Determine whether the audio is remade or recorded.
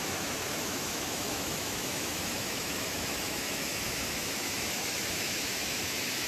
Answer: remade